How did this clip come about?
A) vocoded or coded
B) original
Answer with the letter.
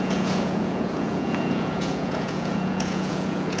A